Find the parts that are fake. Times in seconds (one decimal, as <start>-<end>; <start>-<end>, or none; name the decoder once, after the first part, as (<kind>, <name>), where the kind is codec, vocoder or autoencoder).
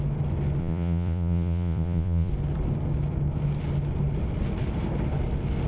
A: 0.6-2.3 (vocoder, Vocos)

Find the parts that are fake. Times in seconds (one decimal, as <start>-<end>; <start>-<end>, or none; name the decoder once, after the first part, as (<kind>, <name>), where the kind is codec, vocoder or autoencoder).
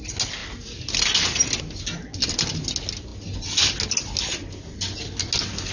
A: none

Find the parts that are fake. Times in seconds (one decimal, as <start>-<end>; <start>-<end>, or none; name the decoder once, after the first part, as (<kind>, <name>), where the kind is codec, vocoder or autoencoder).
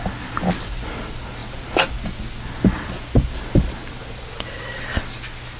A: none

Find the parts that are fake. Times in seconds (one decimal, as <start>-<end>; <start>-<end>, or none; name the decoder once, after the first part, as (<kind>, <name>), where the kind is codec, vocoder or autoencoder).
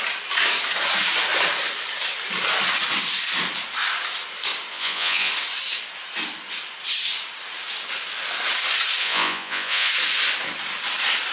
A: 4.7-5.3 (vocoder, Vocos); 9.0-9.9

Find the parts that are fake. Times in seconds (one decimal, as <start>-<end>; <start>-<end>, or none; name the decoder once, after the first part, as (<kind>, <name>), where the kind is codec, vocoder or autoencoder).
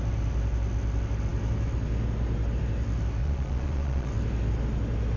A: 3.2-4.1 (vocoder, Vocos)